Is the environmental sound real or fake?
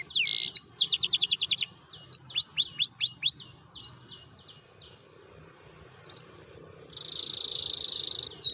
real